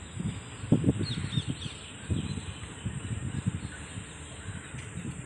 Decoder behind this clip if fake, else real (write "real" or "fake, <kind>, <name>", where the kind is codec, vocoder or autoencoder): real